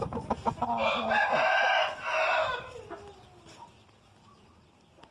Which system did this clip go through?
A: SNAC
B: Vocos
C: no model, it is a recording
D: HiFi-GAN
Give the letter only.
C